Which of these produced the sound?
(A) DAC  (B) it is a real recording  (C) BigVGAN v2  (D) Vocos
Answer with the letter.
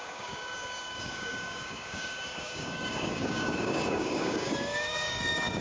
A